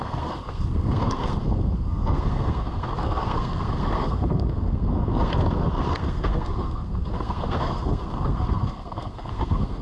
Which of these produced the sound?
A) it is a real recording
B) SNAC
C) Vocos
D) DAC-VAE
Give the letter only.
B